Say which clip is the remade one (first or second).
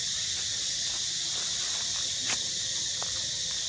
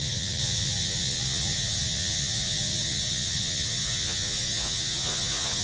second